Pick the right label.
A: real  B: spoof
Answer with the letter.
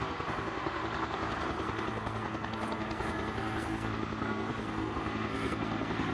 B